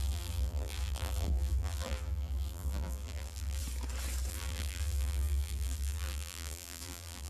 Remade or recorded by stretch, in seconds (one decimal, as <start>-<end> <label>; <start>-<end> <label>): 0.0-3.6 remade; 3.6-4.3 recorded; 4.3-7.3 remade